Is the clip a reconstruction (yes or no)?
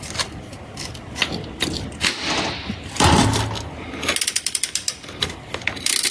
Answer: no